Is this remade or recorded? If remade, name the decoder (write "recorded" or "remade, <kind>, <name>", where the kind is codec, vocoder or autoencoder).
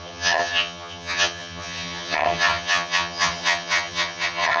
remade, vocoder, HiFi-GAN